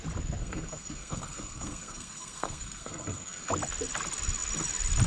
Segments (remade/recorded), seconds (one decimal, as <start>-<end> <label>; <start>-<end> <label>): 0.0-0.4 recorded; 0.4-3.5 remade; 3.5-5.1 recorded